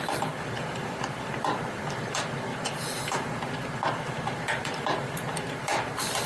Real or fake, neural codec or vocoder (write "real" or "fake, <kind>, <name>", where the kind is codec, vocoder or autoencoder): fake, vocoder, BigVGAN v2